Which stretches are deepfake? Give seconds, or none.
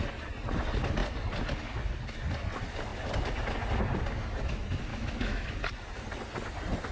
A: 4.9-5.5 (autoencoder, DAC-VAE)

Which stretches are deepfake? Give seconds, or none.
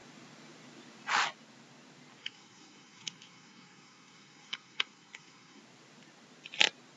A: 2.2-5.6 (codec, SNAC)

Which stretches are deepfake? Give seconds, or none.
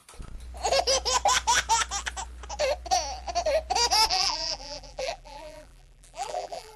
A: 4.1-6.8 (vocoder, BigVGAN v2)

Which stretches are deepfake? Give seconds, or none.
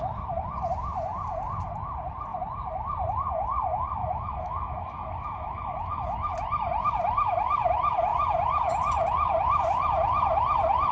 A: 4.0-6.3 (autoencoder, DAC-VAE)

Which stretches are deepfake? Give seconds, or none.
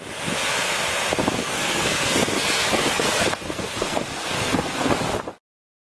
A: 1.4-4.9 (codec, SNAC)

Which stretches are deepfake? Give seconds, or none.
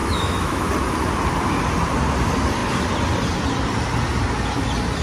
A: 0.0-0.7 (autoencoder, DAC-VAE)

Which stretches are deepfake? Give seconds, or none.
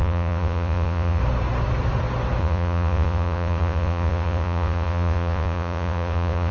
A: 0.0-1.2 (vocoder, Vocos); 2.4-6.5